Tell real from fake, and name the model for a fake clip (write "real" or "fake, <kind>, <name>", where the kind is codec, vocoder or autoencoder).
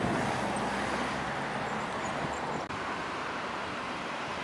real